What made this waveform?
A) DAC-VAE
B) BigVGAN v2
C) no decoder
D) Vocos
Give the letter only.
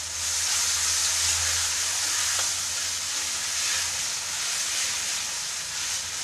C